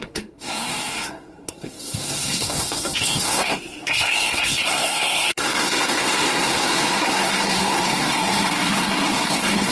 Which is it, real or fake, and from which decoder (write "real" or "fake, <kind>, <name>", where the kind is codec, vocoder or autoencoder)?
fake, codec, SNAC